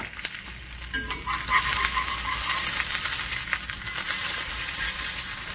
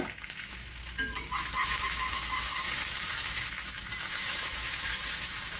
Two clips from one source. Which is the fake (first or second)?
second